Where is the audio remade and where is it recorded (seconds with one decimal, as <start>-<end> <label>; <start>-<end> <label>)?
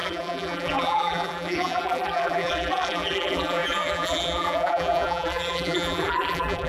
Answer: 0.0-6.7 remade